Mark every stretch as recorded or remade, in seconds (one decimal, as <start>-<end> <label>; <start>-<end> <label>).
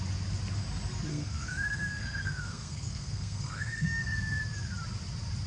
0.0-1.1 recorded; 1.1-4.4 remade; 4.4-5.5 recorded